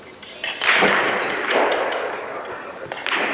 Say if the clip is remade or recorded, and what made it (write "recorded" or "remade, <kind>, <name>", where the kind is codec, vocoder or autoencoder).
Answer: recorded